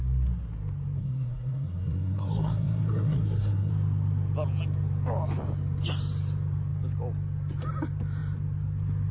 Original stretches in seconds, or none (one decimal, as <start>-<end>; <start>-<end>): 0.0-1.0; 3.7-9.1